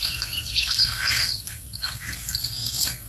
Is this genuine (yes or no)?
no